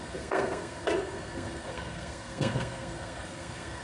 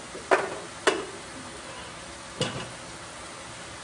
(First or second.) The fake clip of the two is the first